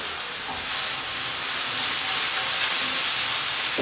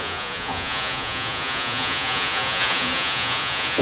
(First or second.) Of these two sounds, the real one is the first